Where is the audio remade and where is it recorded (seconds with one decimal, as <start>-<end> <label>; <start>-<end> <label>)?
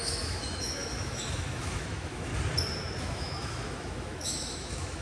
0.0-2.3 remade; 2.3-3.0 recorded; 3.0-5.0 remade